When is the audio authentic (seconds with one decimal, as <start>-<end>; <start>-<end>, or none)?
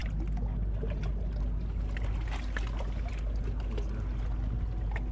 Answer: 0.0-5.1